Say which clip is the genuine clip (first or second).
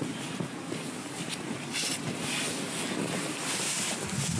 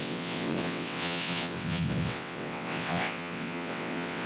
first